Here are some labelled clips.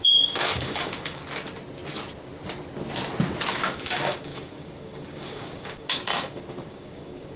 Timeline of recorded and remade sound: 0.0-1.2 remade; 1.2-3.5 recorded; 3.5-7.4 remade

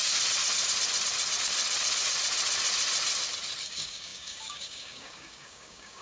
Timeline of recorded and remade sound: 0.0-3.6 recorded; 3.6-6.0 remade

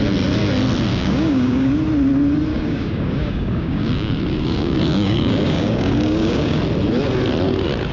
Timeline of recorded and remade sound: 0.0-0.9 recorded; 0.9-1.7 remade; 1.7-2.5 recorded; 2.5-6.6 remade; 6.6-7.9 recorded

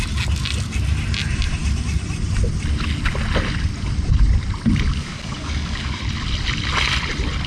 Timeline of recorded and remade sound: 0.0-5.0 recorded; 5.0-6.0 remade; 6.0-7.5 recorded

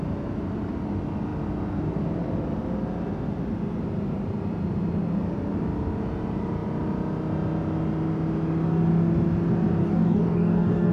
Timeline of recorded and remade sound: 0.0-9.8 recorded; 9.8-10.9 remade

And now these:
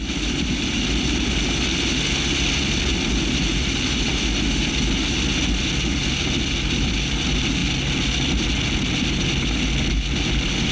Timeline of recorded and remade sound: 0.0-10.7 recorded

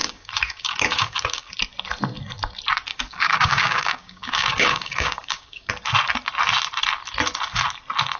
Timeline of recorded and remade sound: 0.0-1.5 remade; 1.5-2.9 recorded; 2.9-5.7 remade; 5.7-8.2 recorded